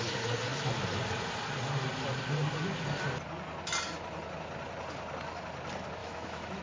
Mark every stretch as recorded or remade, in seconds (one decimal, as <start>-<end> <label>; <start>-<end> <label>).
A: 0.0-6.0 recorded; 6.0-6.6 remade